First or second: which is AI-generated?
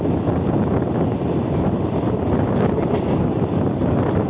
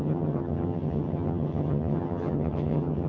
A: second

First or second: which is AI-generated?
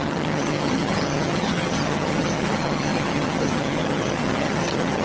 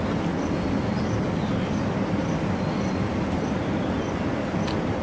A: first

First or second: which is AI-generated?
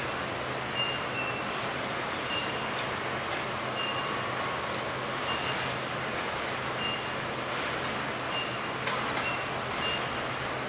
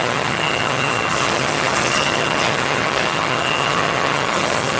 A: second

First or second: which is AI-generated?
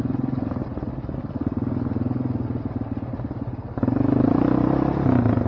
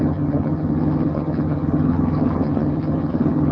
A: second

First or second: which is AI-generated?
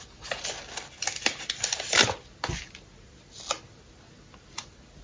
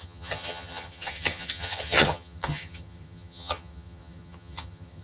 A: second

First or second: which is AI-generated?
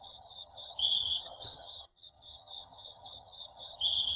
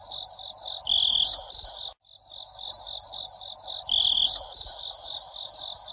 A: first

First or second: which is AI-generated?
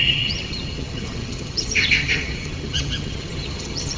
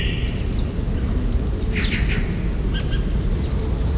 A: first